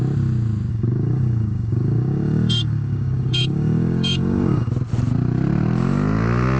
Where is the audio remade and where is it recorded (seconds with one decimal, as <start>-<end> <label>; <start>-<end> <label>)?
0.0-0.7 recorded; 0.7-4.7 remade; 4.7-6.6 recorded